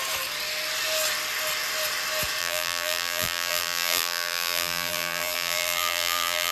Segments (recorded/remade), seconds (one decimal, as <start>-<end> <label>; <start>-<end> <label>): 0.0-2.4 recorded; 2.4-6.5 remade